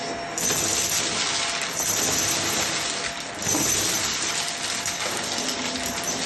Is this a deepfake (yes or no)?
no